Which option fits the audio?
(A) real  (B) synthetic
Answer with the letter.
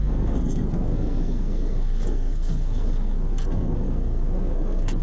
B